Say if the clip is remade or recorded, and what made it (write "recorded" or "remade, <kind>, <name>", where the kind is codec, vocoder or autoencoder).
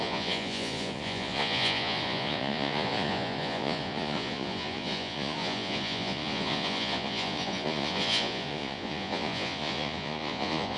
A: remade, vocoder, Vocos